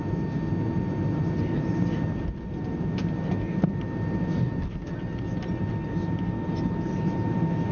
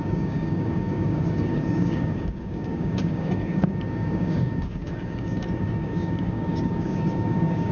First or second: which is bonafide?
first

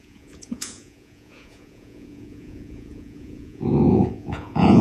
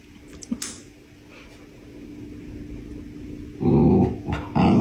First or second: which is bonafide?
second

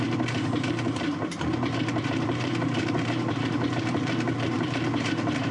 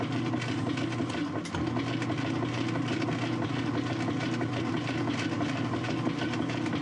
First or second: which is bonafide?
second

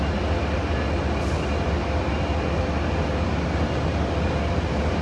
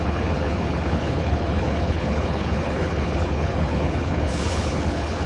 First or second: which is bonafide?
first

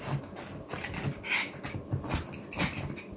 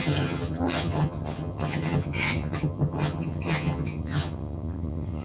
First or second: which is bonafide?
first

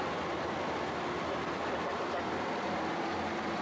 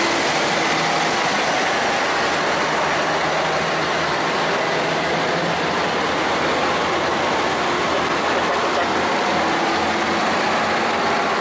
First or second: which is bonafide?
second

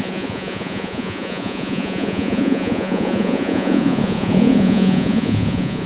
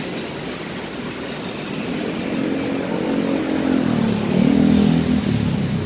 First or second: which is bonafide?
second